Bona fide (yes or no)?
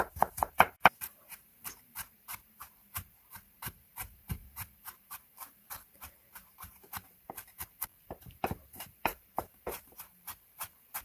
no